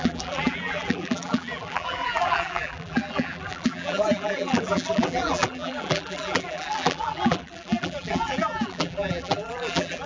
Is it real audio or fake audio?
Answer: fake